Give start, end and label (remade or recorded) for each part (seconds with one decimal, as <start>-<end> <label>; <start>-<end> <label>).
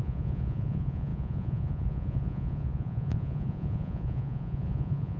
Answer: 0.0-5.2 remade